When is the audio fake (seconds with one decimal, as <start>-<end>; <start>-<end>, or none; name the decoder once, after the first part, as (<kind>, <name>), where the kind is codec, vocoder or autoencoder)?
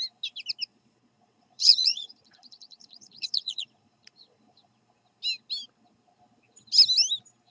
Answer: 0.7-4.8 (vocoder, Vocos)